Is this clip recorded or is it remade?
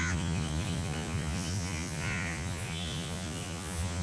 remade